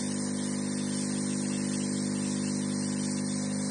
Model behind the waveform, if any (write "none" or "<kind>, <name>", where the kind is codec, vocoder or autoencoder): none